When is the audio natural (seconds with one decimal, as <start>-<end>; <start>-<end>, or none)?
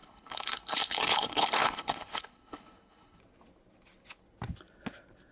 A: 3.2-5.3